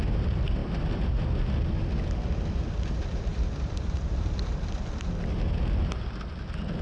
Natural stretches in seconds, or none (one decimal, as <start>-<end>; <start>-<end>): 0.0-3.3; 4.1-6.8